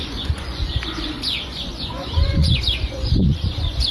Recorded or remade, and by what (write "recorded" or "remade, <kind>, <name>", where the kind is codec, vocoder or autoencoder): remade, vocoder, Vocos